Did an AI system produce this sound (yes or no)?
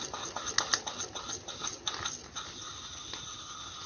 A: no